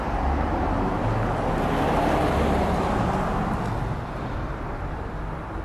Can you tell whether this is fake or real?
real